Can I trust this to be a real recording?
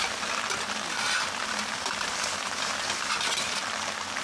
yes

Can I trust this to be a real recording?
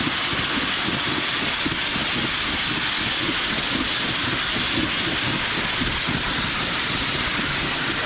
yes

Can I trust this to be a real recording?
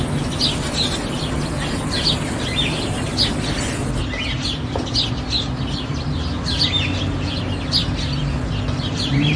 yes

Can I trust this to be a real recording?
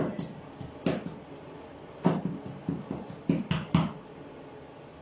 yes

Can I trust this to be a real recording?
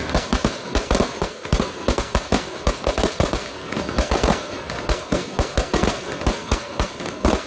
no